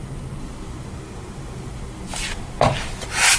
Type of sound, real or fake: real